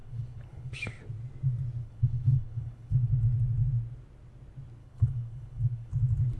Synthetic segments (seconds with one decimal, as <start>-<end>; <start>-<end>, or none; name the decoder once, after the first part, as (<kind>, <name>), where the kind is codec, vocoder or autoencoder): 0.0-0.7 (codec, HILCodec); 1.8-3.2; 4.8-5.9